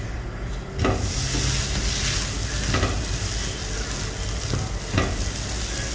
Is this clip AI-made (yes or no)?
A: no